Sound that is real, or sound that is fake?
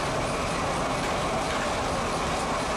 real